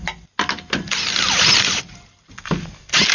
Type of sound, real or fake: real